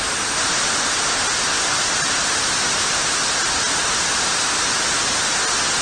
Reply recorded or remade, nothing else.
recorded